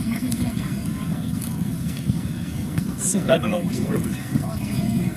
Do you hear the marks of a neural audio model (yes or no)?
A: yes